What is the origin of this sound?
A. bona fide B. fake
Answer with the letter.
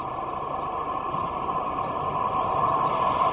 A